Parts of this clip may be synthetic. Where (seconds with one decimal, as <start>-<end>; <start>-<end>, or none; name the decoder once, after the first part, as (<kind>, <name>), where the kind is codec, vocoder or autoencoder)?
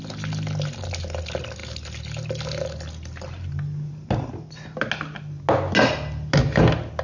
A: none